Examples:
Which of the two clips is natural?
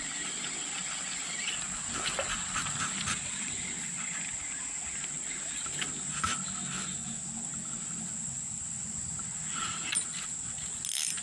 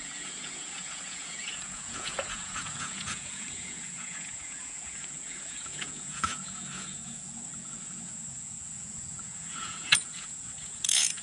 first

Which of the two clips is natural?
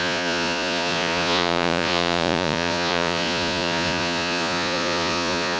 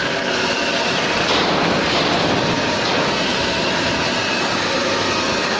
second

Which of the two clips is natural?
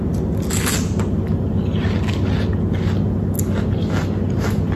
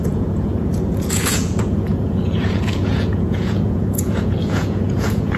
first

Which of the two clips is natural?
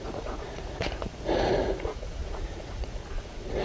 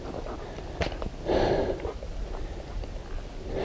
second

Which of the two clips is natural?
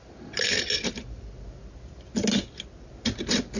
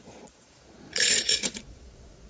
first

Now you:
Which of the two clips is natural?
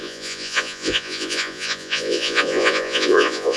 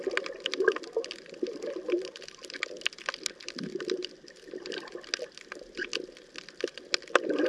second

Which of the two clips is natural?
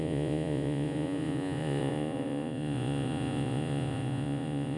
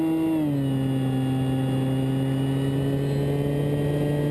second